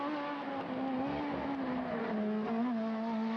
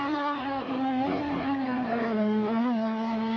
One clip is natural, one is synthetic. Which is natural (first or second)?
first